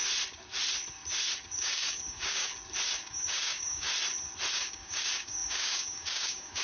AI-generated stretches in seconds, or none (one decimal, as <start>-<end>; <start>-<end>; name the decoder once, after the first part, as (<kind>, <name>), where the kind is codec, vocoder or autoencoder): 1.6-2.5 (codec, DAC); 3.0-3.9; 4.5-6.6